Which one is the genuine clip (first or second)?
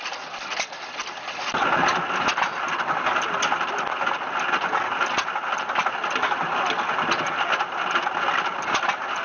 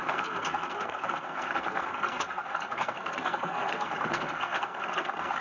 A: first